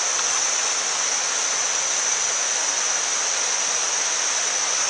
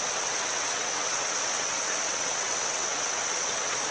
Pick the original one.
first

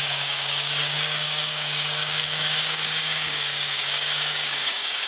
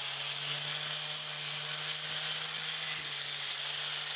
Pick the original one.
second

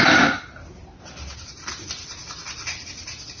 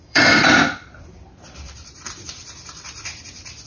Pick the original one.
first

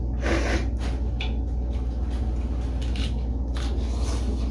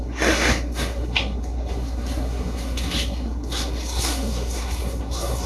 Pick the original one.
first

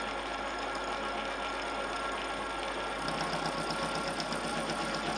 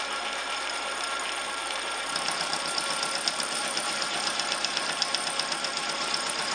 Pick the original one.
first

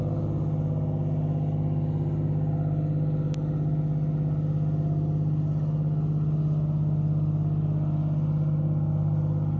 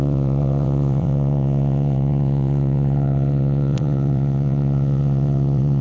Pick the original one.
first